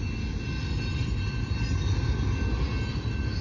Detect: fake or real real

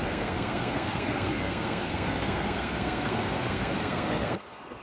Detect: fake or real fake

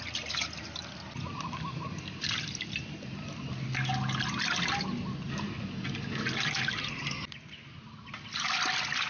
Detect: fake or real real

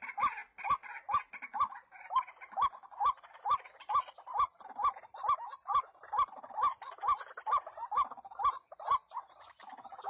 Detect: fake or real real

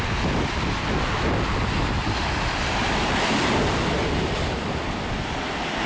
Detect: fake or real real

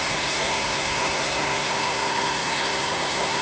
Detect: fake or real fake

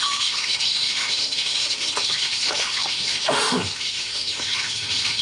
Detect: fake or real fake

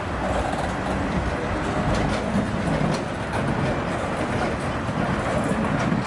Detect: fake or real real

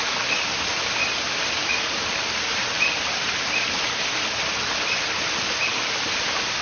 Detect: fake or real real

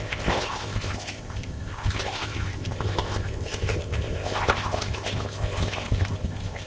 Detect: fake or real fake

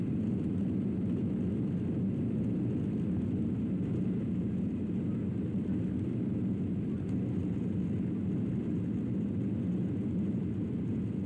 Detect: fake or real real